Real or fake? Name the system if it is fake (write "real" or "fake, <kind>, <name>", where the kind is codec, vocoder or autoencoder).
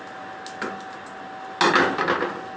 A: real